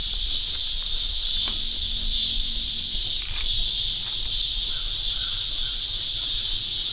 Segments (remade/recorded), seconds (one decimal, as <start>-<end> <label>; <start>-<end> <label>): 0.0-6.9 recorded